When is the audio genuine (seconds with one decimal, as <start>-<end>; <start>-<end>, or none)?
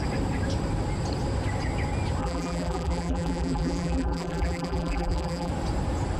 0.0-2.2; 5.5-6.2